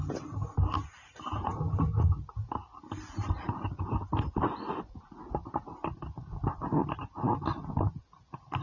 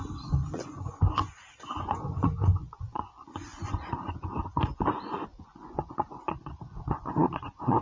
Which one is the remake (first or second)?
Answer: second